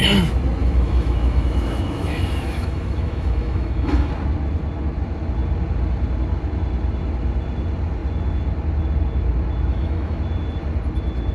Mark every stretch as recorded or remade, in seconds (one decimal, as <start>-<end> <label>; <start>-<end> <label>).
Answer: 0.0-0.6 recorded; 0.6-4.1 remade; 4.1-9.7 recorded; 9.7-10.2 remade; 10.2-11.3 recorded